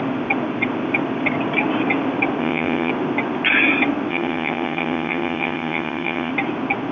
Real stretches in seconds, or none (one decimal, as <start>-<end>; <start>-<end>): 0.0-2.4; 2.9-4.1; 6.3-6.9